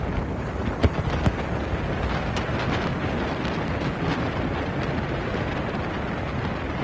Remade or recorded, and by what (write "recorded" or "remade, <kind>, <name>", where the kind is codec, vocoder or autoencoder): recorded